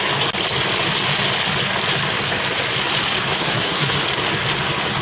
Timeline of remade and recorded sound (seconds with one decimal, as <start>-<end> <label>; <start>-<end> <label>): 0.0-3.4 recorded; 3.4-4.0 remade; 4.0-5.0 recorded